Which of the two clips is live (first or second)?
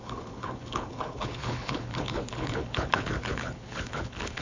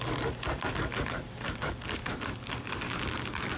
second